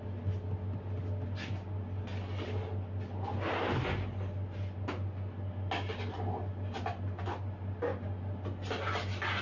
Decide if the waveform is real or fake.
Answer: real